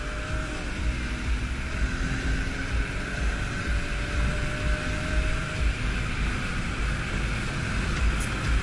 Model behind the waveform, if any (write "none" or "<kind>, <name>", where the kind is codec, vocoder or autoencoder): none